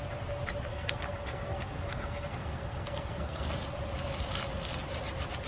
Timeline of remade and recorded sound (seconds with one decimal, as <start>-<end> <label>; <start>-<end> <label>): 0.0-0.7 recorded; 0.7-3.5 remade; 3.5-5.5 recorded